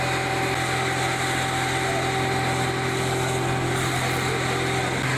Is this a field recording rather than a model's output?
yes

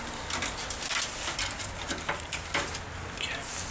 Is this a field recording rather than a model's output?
yes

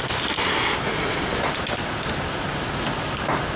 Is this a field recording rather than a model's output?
yes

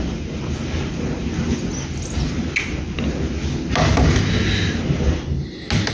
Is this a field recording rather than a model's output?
yes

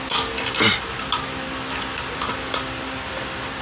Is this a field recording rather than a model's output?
yes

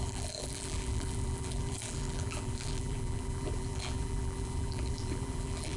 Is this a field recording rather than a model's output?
no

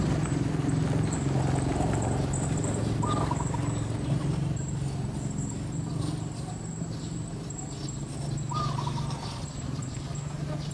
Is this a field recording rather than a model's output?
no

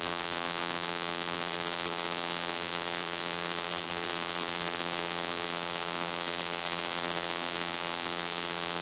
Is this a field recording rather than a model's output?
no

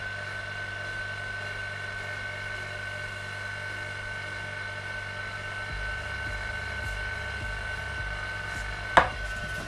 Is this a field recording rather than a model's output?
yes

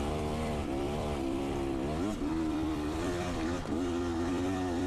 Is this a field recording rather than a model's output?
no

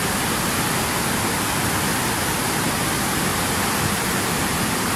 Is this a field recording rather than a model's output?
yes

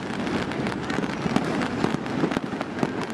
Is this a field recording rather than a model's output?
yes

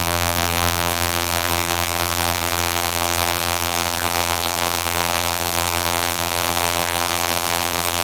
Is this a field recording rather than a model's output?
no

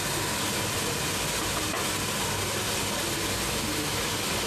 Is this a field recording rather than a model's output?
yes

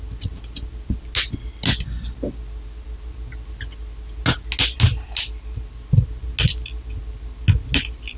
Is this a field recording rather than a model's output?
yes